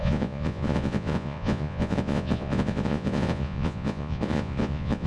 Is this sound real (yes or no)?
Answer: no